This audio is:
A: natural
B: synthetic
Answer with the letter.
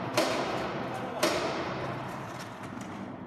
B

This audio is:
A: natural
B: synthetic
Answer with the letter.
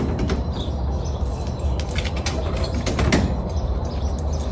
A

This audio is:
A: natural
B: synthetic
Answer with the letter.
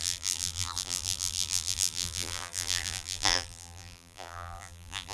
B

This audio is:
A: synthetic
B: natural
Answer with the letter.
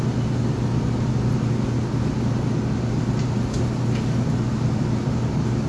B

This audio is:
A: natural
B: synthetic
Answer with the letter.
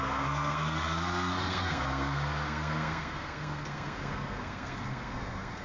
B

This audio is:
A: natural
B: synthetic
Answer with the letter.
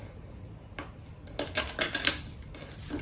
A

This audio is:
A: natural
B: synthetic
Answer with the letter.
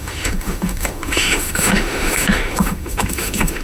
B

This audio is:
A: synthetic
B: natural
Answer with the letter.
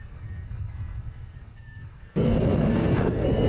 A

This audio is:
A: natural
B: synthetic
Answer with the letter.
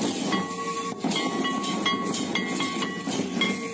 A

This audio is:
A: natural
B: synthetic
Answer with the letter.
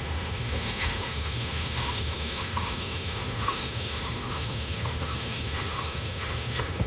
B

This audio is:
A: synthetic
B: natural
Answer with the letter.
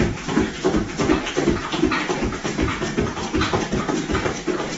B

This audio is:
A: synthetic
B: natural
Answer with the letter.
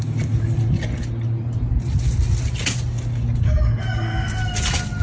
B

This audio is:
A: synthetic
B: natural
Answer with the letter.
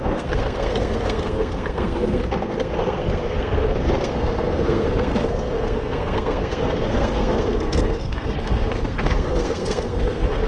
A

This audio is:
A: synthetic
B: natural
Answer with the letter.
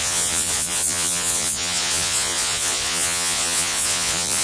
A